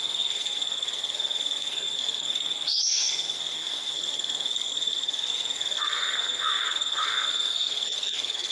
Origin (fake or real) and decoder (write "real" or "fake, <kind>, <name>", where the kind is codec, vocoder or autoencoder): fake, codec, SNAC